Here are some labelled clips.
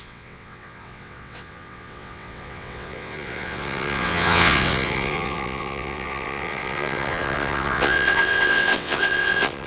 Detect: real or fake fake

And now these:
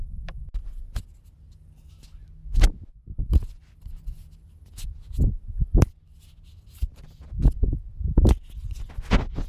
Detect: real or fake real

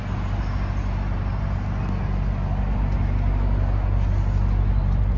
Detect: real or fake real